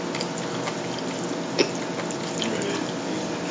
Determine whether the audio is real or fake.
real